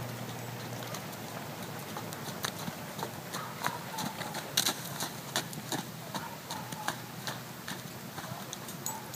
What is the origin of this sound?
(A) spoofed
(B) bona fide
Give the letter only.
B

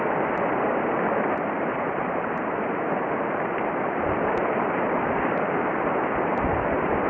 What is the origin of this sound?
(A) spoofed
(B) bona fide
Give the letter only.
B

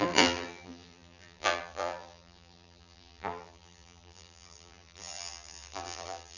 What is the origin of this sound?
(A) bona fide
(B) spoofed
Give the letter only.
B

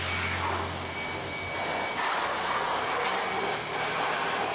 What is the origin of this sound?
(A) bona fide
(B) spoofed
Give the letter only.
A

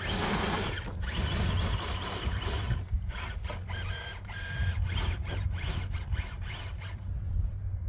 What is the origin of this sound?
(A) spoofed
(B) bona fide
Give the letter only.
A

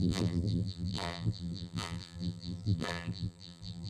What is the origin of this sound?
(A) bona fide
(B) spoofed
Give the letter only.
B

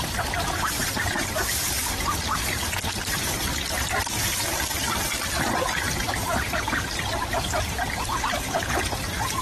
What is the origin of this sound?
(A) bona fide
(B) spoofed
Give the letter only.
B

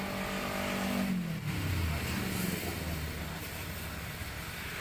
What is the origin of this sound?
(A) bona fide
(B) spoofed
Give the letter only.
A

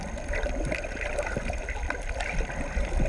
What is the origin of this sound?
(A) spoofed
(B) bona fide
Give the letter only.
A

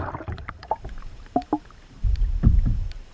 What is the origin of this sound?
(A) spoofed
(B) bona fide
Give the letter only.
A